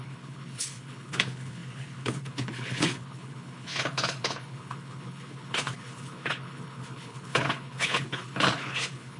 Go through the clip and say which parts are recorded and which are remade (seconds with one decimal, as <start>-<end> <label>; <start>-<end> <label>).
0.0-9.2 remade